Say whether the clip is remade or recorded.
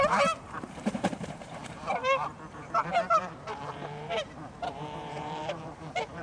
remade